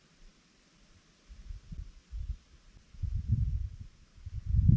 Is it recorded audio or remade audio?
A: recorded